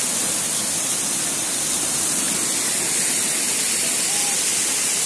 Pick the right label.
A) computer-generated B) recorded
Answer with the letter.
B